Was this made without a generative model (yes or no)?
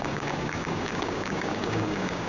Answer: no